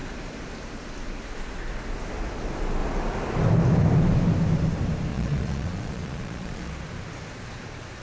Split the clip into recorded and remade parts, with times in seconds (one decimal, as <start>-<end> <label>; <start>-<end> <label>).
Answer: 0.0-5.1 recorded; 5.1-6.7 remade; 6.7-8.0 recorded